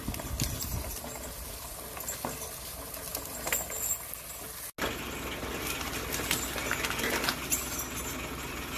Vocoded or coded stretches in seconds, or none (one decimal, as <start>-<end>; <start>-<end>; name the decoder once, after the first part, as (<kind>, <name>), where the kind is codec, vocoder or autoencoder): none